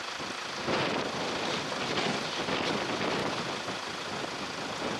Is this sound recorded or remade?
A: recorded